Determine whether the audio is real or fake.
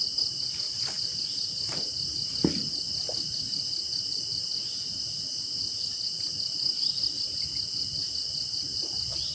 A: real